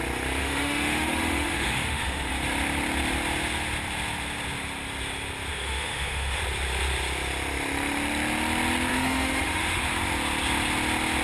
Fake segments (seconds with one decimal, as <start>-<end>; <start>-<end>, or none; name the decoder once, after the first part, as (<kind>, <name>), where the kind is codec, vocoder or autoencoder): 0.4-2.3 (autoencoder, DAC-VAE); 5.5-6.4; 8.9-9.8